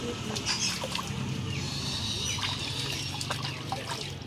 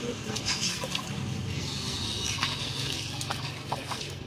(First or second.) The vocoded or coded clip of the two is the second